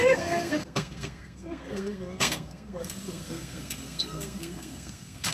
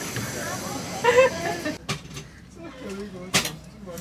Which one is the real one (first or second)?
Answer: second